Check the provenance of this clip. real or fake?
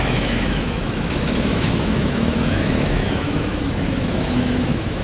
fake